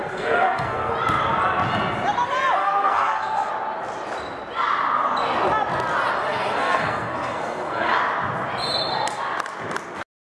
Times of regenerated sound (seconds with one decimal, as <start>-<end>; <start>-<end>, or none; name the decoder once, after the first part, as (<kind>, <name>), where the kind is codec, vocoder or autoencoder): 0.0-0.9 (codec, SNAC); 2.6-3.5; 6.3-8.0